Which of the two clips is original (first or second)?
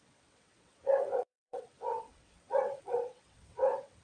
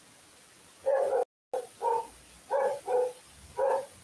second